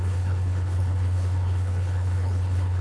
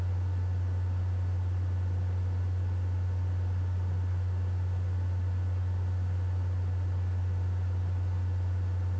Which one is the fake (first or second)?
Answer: first